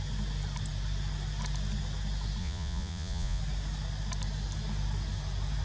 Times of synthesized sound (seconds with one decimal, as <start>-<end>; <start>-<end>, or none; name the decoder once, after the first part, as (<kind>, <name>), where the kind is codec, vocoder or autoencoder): 2.4-3.4 (vocoder, Vocos)